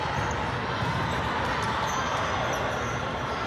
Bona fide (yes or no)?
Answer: yes